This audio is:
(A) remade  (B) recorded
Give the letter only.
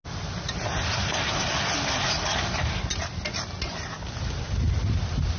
B